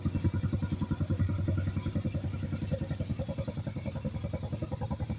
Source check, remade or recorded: recorded